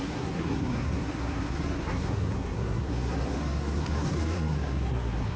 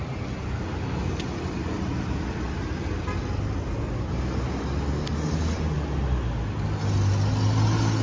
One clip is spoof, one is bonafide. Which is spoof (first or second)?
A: first